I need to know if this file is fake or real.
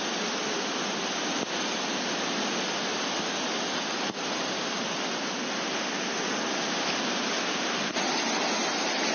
real